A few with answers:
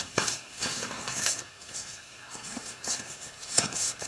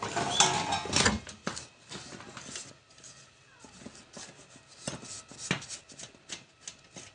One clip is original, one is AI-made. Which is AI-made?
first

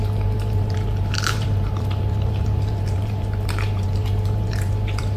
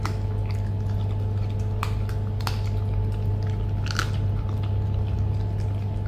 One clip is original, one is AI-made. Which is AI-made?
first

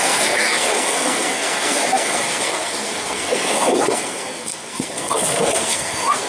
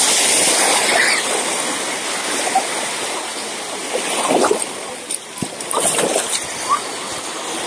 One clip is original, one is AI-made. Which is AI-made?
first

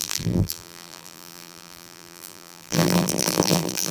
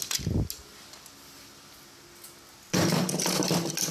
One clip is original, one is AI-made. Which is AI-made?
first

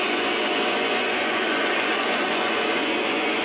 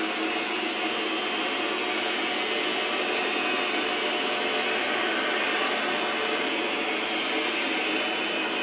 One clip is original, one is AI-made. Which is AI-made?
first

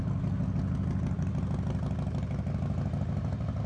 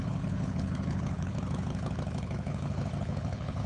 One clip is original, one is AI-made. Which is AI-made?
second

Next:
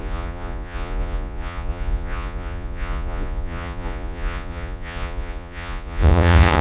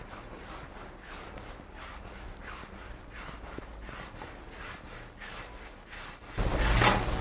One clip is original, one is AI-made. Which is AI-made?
first